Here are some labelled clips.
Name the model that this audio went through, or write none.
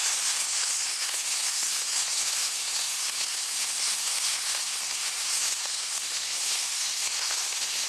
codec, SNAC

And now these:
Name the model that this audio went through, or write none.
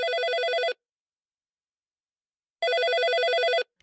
none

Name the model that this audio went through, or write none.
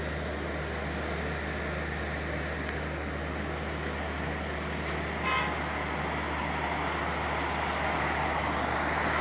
none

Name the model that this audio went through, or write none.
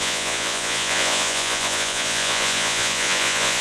vocoder, Vocos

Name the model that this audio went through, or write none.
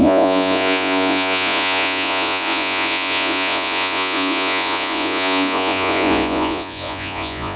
vocoder, Vocos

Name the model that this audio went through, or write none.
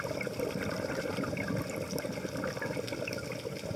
none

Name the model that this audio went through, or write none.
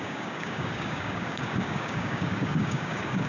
codec, DAC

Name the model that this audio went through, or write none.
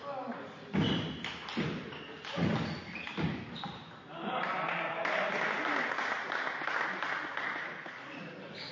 none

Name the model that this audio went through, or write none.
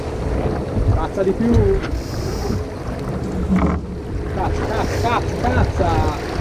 none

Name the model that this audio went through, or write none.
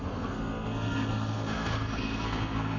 codec, SNAC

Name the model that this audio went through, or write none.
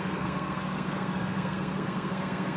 codec, SNAC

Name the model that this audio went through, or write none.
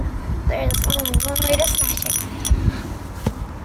none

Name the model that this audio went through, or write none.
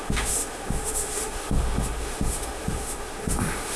autoencoder, DAC-VAE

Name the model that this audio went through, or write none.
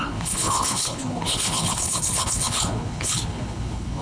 codec, HILCodec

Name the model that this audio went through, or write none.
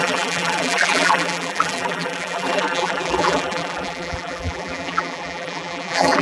vocoder, BigVGAN v2